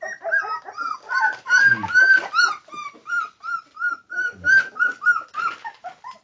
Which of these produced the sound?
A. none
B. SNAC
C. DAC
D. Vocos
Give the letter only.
A